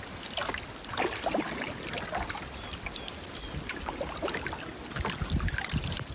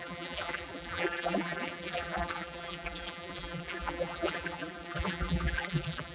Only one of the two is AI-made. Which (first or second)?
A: second